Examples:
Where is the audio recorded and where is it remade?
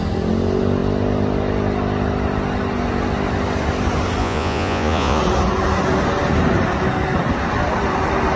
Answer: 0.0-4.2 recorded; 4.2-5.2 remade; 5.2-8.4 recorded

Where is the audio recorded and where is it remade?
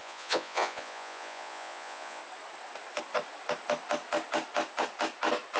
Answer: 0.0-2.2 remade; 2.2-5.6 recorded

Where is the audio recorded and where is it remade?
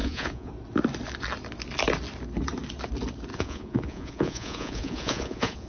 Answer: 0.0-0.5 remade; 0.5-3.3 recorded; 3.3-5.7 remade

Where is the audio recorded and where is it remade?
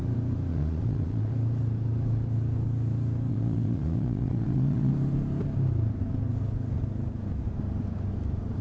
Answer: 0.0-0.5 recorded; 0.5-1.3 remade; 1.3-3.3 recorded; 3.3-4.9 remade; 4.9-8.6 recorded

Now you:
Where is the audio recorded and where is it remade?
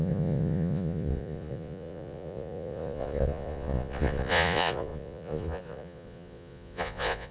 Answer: 0.0-7.3 remade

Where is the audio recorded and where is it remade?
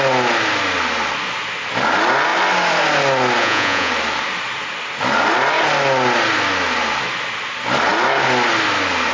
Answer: 0.0-3.4 recorded; 3.4-3.9 remade; 3.9-9.1 recorded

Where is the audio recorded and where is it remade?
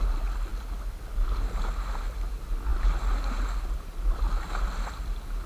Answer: 0.0-5.5 recorded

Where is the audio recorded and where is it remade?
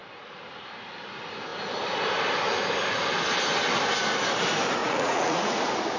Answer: 0.0-0.5 remade; 0.5-4.8 recorded; 4.8-5.6 remade; 5.6-6.0 recorded